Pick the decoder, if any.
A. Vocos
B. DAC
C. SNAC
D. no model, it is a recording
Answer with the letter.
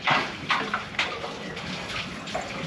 D